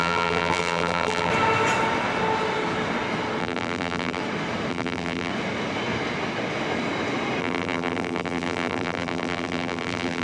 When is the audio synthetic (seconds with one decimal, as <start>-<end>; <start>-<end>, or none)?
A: 0.0-1.3; 3.4-4.2; 4.7-5.3; 7.4-10.2